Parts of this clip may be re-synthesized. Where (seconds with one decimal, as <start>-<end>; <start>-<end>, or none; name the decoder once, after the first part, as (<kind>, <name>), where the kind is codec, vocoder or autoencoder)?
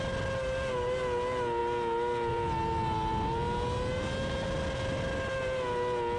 none